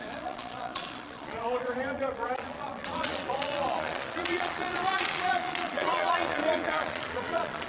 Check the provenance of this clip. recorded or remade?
remade